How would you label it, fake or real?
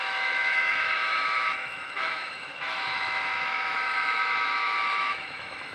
fake